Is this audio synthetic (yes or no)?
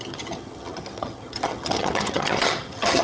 yes